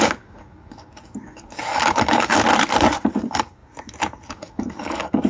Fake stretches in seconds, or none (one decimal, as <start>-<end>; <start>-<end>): 0.0-2.3; 3.1-5.3

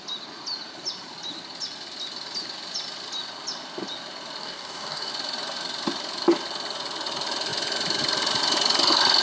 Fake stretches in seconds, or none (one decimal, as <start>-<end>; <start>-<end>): 4.4-5.1